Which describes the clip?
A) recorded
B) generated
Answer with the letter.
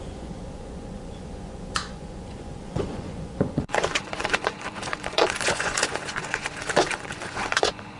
B